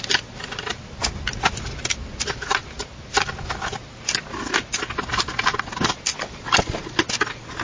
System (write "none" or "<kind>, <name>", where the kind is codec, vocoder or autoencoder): none